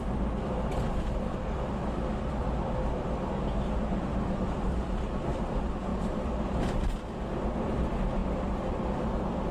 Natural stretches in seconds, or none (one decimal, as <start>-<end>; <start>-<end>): none